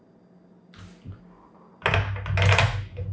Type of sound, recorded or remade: recorded